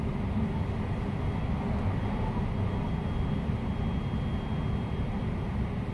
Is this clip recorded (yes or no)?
yes